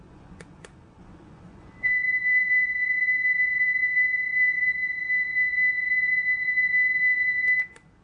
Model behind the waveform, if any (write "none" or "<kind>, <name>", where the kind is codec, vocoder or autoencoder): vocoder, Vocos